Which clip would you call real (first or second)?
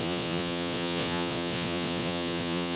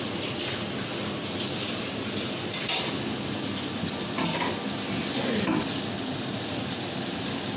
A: second